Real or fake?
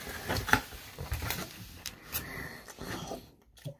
fake